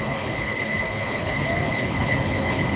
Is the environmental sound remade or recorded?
remade